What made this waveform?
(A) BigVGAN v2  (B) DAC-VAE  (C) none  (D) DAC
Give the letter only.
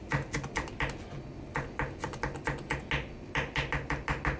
C